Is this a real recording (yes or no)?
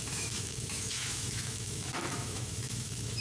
no